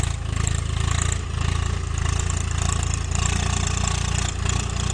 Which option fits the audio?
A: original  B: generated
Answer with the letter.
A